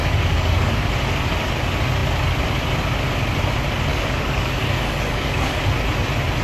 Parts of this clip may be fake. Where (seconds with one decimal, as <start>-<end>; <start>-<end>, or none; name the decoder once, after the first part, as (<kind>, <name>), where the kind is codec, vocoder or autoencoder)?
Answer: 0.0-0.9 (codec, DAC); 3.9-5.6

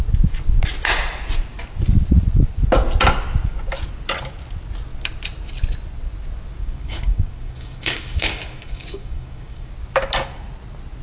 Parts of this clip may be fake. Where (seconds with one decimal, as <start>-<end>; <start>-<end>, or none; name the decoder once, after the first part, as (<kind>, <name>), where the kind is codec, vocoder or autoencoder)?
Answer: 6.6-9.7 (codec, DAC)

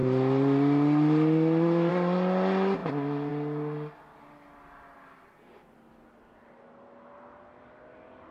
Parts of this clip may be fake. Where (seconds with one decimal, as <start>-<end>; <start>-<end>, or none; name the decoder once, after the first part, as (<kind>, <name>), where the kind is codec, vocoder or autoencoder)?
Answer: none

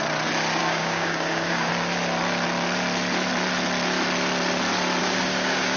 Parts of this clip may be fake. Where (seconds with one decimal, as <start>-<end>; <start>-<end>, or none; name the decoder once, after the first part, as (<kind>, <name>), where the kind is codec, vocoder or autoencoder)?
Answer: 0.6-1.7 (codec, DAC); 5.0-5.8

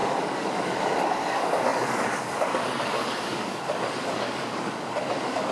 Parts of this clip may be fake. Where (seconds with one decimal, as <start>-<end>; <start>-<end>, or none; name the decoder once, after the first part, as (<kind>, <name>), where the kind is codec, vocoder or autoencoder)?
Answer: 0.0-5.5 (codec, DAC)

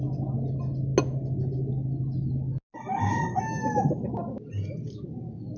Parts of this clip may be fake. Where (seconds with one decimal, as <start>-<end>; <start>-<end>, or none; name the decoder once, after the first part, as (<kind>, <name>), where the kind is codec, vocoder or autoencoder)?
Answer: none

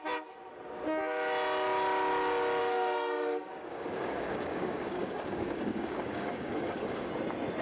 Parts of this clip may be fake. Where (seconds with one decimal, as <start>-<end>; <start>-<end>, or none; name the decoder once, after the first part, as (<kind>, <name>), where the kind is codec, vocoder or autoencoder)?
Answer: 2.6-7.1 (codec, DAC)